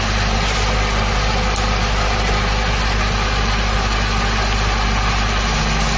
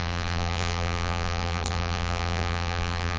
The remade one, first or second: second